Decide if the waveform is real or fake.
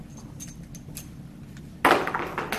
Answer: real